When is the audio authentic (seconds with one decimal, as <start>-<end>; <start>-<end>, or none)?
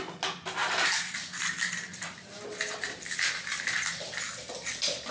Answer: 0.0-5.1